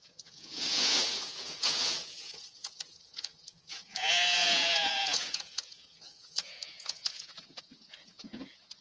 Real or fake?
fake